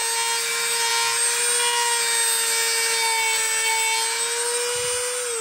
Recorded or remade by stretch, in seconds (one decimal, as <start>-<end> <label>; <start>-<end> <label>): 0.0-5.4 recorded